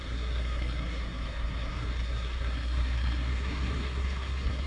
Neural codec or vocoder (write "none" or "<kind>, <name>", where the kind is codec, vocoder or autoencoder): codec, SNAC